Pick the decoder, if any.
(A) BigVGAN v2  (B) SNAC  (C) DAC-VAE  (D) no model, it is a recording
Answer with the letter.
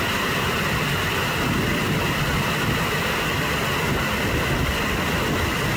D